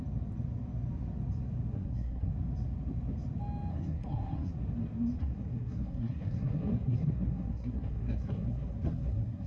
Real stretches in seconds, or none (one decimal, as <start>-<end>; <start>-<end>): 0.0-1.7; 2.3-3.7; 4.5-5.2